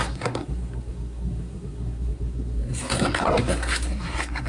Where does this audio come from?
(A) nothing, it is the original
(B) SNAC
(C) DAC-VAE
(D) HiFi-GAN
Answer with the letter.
B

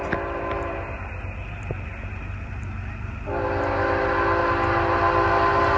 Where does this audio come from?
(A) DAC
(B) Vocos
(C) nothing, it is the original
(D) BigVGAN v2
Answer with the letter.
C